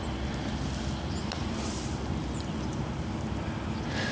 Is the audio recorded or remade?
recorded